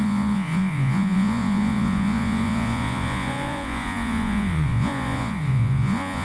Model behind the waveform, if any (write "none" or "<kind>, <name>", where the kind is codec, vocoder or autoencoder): vocoder, Vocos